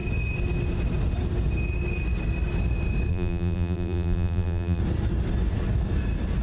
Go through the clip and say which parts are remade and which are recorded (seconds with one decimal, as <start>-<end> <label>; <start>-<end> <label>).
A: 0.0-3.1 recorded; 3.1-4.8 remade; 4.8-6.4 recorded